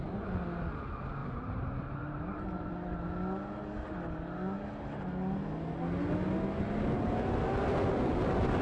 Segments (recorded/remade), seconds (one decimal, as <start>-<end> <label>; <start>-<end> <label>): 0.0-1.2 recorded; 1.2-2.7 remade; 2.7-8.6 recorded